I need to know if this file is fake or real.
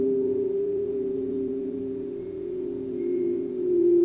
fake